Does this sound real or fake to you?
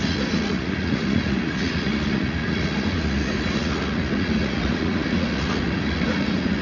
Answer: fake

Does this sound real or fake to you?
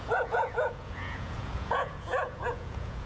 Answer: fake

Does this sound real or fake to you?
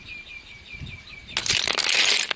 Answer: real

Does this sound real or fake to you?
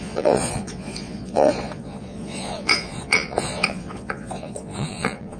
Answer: fake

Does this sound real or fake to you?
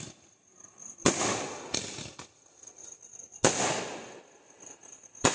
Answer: real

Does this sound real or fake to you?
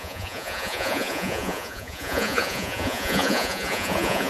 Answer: fake